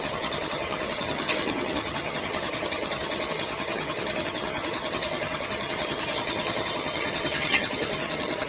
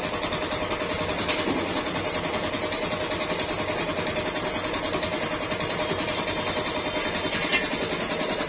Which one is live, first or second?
second